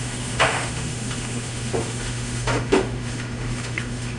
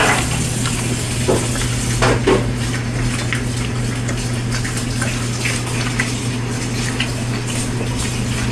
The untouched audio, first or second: second